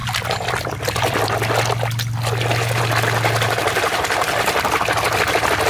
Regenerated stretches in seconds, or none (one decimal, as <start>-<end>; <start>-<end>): none

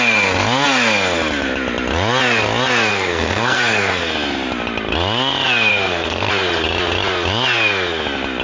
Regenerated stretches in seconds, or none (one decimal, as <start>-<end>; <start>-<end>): 2.9-4.0; 5.7-6.3